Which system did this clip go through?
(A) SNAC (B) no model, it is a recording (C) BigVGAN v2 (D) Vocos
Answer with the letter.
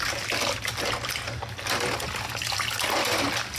B